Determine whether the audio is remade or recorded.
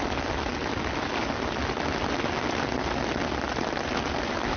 recorded